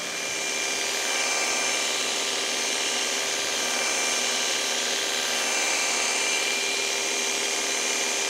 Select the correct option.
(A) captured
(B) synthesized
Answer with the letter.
B